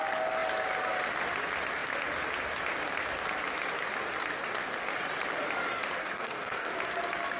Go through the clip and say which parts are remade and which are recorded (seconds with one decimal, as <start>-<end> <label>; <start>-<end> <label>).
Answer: 0.0-6.0 recorded; 6.0-6.7 remade; 6.7-7.4 recorded

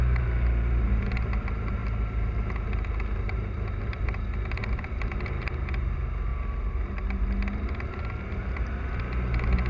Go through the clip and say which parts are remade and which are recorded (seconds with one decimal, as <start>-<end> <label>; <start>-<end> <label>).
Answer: 0.0-1.8 remade; 1.8-3.2 recorded; 3.2-4.6 remade; 4.6-5.1 recorded; 5.1-6.3 remade; 6.3-8.2 recorded; 8.2-9.7 remade

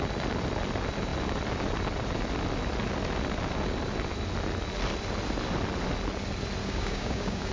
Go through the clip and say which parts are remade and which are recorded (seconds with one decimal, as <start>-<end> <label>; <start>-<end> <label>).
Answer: 0.0-6.6 recorded; 6.6-7.5 remade

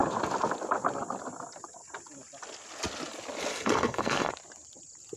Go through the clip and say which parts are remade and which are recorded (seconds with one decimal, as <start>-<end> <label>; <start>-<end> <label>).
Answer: 0.0-3.5 recorded; 3.5-4.3 remade; 4.3-5.2 recorded